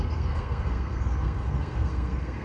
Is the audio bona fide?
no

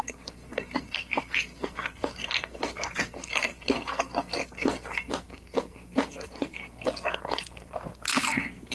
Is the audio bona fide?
no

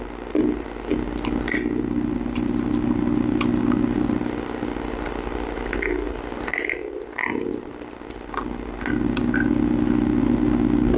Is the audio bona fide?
yes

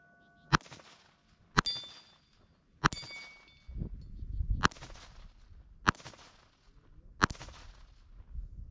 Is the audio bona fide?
yes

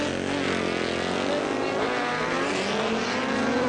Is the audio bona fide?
yes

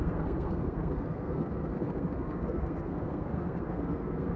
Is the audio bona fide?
no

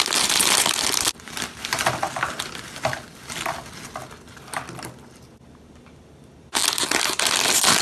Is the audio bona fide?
yes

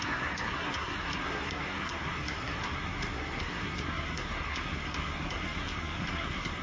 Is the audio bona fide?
no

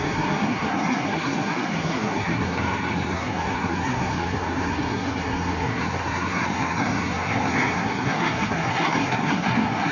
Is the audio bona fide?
no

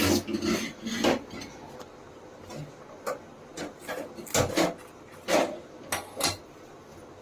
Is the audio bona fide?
yes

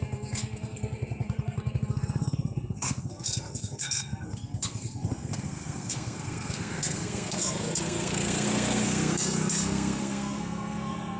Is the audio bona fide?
no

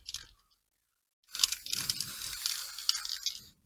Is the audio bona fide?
yes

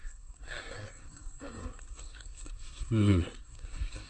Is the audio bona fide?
no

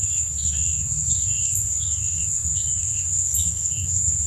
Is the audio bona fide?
no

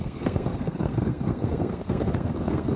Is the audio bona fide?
no